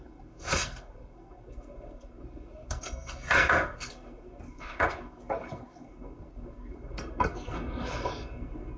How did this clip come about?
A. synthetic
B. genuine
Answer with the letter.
A